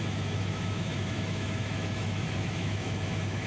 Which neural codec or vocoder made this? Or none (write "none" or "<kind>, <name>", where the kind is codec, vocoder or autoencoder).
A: autoencoder, DAC-VAE